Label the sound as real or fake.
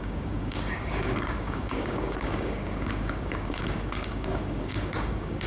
fake